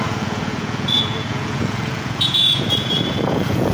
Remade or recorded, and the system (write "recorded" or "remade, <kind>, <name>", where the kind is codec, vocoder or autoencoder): remade, vocoder, Vocos